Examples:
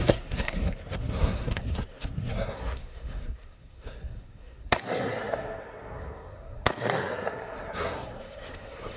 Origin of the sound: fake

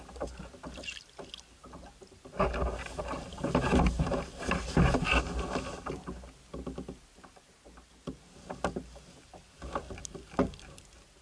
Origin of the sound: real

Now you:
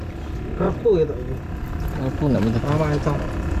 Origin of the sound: real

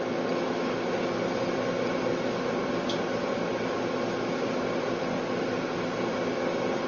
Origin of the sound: real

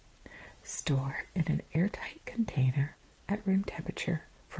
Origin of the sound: real